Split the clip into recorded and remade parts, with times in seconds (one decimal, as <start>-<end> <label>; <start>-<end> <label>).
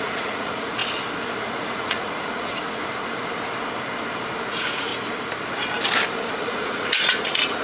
0.0-0.8 remade; 0.8-1.4 recorded; 1.4-2.8 remade; 2.8-4.5 recorded; 4.5-4.9 remade; 4.9-6.4 recorded; 6.4-7.6 remade